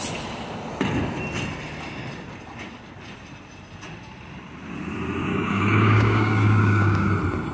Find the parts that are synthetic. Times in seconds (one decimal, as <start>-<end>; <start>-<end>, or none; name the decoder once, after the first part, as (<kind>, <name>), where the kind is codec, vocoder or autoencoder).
5.3-7.1 (codec, DAC)

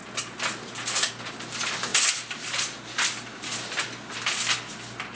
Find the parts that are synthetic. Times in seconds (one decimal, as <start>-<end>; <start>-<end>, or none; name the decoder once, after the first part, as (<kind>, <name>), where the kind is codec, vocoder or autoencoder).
none